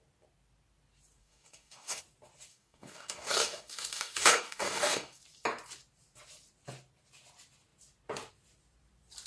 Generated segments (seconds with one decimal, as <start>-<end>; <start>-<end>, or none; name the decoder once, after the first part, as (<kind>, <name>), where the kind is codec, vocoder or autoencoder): 1.2-2.0 (codec, DAC); 2.5-5.2